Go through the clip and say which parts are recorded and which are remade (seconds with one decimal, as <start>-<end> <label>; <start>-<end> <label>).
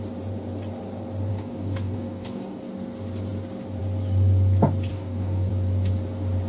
0.0-1.3 recorded; 1.3-2.6 remade; 2.6-4.9 recorded; 4.9-5.5 remade; 5.5-6.5 recorded